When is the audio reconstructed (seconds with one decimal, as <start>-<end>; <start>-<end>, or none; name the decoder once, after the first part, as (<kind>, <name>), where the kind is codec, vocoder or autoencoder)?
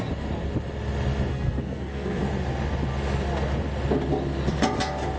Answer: 1.3-2.2 (codec, SNAC)